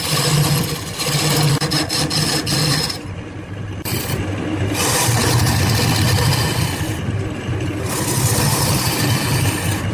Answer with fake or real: real